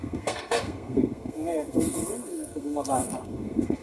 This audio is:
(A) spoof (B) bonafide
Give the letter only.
A